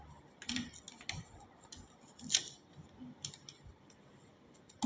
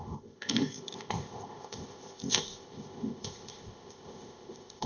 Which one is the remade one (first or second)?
second